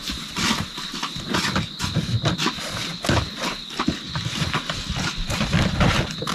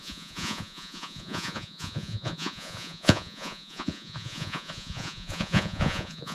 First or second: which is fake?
second